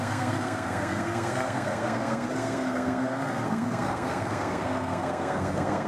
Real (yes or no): no